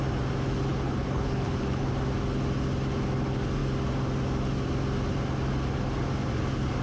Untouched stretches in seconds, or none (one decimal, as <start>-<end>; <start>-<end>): 0.0-0.7; 1.9-6.8